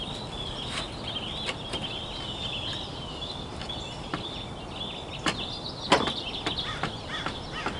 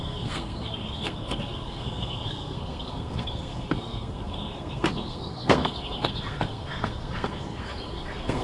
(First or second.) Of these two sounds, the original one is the first